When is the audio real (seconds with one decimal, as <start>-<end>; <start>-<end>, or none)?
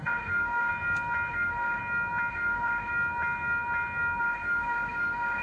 0.7-1.3; 1.8-2.3; 2.9-4.2